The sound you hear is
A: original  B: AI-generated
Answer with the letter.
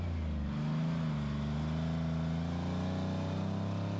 A